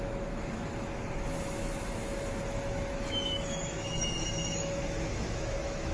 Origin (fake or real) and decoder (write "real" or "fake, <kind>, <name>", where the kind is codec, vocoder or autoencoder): fake, autoencoder, DAC-VAE